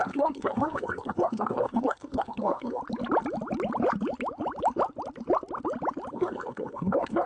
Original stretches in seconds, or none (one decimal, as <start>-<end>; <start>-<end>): 2.8-6.1